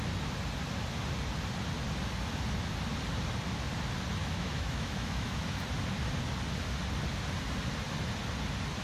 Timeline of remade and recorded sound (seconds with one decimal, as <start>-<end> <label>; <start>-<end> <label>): 0.0-4.2 recorded; 4.2-5.6 remade; 5.6-8.8 recorded